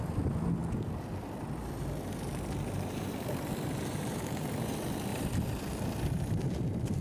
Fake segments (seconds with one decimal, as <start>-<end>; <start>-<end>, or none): 0.0-0.6; 3.0-5.1

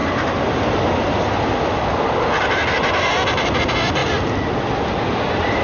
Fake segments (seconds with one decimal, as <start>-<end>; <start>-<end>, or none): none

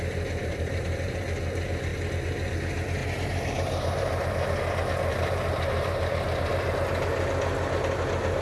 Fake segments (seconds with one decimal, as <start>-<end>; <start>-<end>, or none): 0.4-1.2; 3.0-4.3; 5.1-6.5

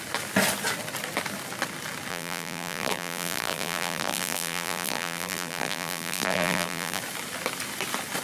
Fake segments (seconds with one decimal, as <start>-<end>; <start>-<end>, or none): 2.1-7.0

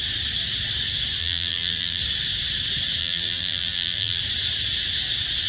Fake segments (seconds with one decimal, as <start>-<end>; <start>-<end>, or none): 1.2-2.0; 3.0-4.2

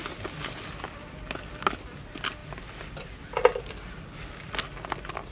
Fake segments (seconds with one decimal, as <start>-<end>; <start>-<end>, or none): none

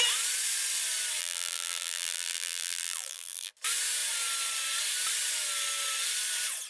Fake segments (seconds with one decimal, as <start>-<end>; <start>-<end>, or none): 1.2-3.5